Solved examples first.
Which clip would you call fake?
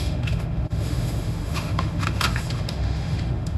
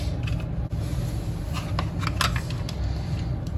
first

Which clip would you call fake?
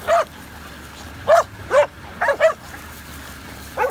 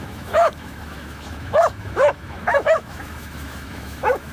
second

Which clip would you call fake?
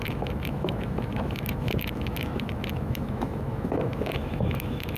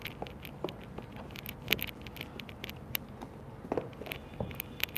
first